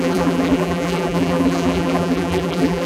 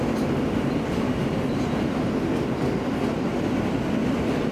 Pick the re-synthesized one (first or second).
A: first